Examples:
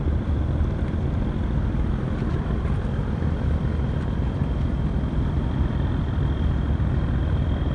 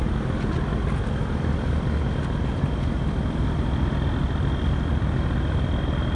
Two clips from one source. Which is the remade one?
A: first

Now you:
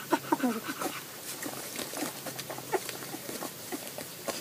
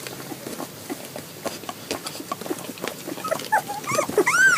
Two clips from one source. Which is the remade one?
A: first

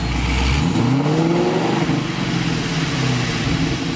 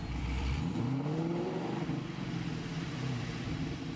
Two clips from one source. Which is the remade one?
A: second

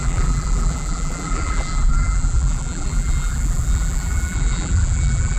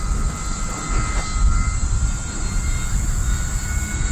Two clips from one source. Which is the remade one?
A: first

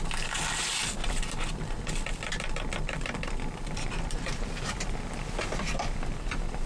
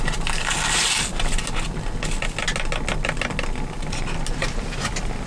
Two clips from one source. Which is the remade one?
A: first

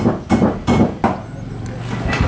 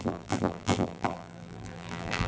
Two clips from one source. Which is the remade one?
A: second